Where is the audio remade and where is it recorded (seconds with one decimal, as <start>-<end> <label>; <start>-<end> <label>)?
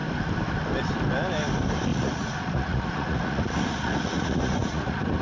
0.0-1.9 recorded; 1.9-5.2 remade